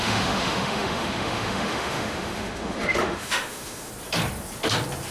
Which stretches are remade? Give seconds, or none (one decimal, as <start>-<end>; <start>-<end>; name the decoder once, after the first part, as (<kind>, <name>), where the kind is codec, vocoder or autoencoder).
0.0-3.9 (autoencoder, DAC-VAE)